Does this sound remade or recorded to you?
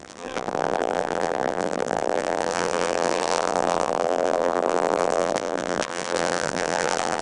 remade